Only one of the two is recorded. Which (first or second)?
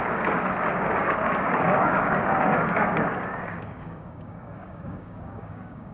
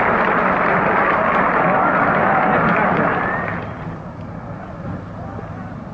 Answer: second